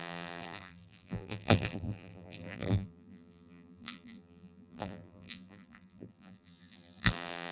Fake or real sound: fake